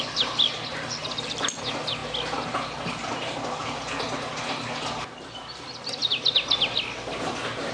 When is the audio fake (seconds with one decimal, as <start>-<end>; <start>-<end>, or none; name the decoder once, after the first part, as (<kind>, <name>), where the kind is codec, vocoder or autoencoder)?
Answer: none